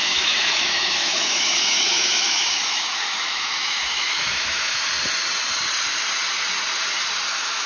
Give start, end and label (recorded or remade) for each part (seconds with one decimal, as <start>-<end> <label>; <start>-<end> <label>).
0.0-4.8 remade; 4.8-7.3 recorded; 7.3-7.7 remade